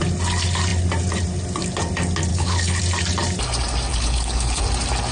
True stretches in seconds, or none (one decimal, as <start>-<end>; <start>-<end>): 0.0-2.3; 2.8-3.9; 4.6-5.1